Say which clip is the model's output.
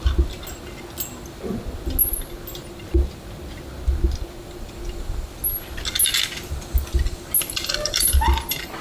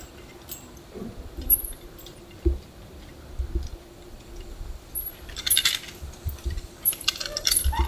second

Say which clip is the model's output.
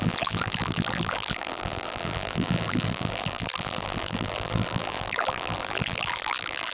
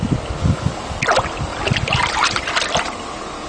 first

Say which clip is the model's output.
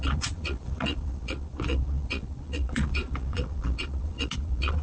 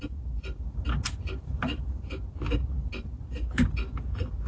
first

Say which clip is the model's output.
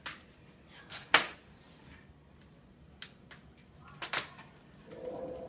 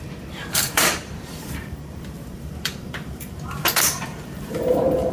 second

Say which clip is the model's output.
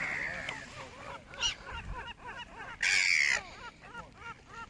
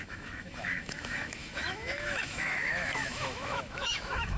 second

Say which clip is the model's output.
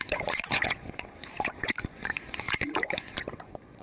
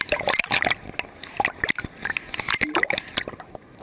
first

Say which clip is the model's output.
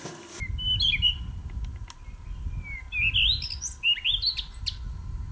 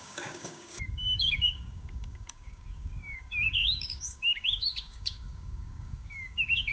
second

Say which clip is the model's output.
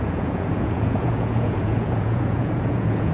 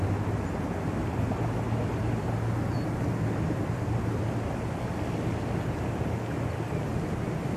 first